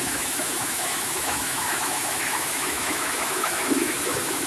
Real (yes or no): no